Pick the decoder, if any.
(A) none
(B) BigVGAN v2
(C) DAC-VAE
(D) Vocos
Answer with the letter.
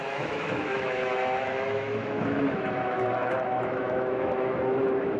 C